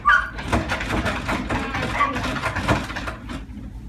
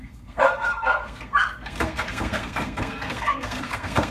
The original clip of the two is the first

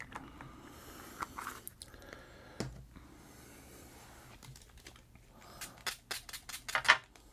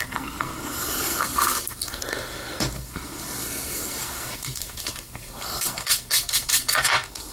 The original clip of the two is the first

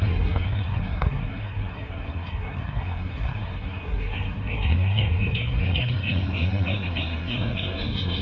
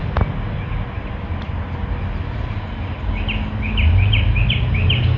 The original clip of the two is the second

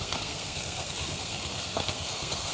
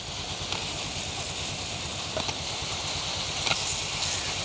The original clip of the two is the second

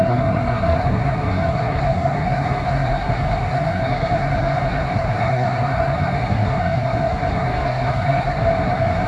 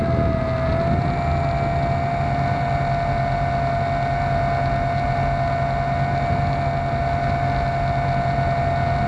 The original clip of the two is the second